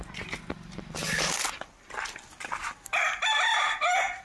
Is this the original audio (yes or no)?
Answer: yes